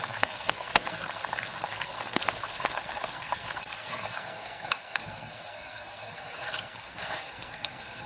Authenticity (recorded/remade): remade